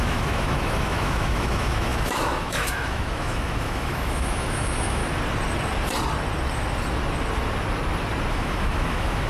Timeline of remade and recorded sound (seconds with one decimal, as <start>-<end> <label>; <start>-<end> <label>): 0.0-5.0 remade; 5.0-8.3 recorded; 8.3-9.3 remade